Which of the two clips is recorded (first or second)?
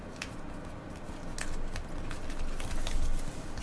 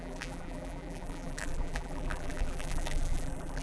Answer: first